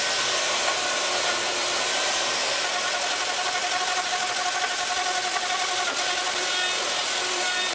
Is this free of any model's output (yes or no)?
yes